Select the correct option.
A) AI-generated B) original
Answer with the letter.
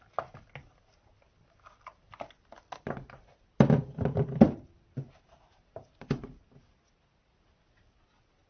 B